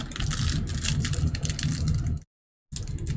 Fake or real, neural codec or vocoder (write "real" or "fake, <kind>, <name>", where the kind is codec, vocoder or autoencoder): real